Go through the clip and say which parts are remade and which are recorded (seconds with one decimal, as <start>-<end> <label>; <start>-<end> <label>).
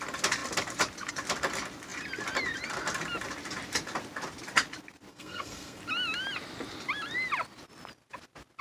0.0-5.1 recorded; 5.1-5.8 remade; 5.8-8.6 recorded